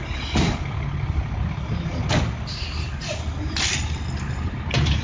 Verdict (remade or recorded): recorded